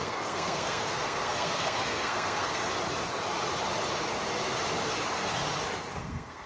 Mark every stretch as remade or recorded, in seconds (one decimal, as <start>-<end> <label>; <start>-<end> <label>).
0.0-2.6 remade; 2.6-6.0 recorded; 6.0-6.5 remade